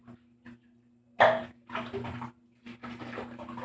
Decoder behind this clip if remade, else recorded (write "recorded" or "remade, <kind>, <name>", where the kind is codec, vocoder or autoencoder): recorded